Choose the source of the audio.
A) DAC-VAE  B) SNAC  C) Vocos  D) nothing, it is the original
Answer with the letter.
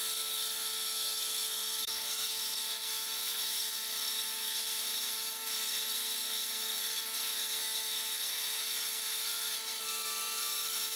B